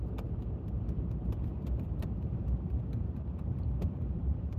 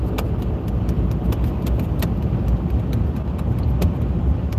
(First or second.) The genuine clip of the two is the second